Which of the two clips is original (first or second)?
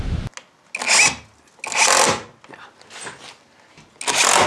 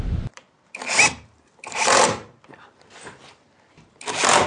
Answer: first